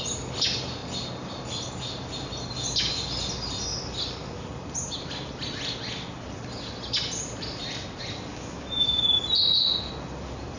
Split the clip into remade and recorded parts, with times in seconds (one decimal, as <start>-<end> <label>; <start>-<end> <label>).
0.0-8.3 recorded; 8.3-9.2 remade; 9.2-10.6 recorded